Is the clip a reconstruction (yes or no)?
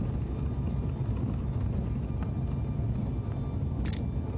no